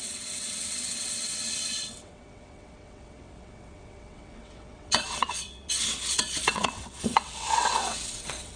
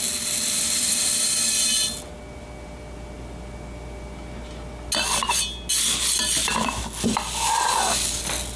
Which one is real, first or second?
second